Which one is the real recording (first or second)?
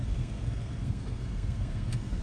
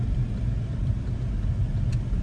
second